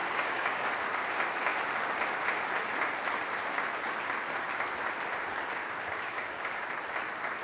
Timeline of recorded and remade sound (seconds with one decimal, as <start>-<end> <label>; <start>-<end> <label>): 0.0-0.7 remade; 0.7-5.6 recorded; 5.6-6.7 remade; 6.7-7.4 recorded